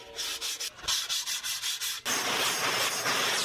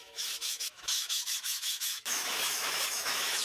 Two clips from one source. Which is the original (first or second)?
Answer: first